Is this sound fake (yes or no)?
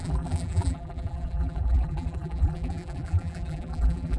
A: yes